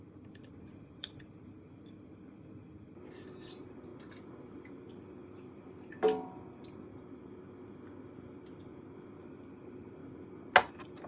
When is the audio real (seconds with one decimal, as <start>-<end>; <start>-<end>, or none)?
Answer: 3.9-4.9; 6.9-9.2; 10.0-10.7